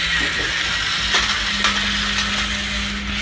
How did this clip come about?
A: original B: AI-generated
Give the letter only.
A